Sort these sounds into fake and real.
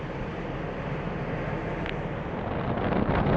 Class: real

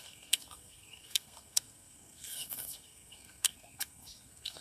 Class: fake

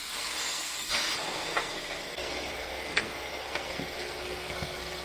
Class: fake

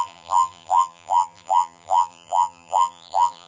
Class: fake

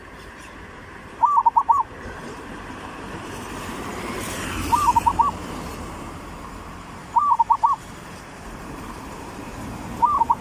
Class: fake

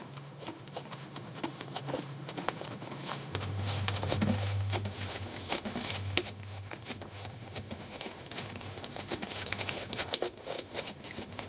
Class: fake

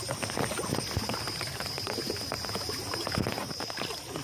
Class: real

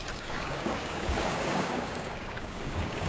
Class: fake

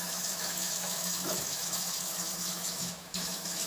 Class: fake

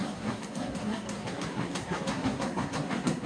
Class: fake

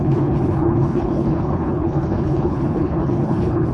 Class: fake